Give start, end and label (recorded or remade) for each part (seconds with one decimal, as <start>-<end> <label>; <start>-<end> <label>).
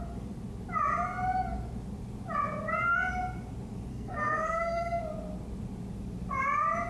0.0-3.9 recorded; 3.9-5.0 remade; 5.0-6.9 recorded